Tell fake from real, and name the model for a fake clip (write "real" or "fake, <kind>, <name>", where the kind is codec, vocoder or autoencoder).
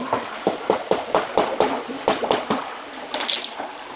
real